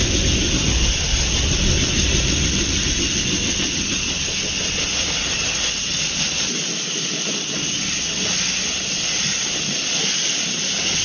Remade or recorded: recorded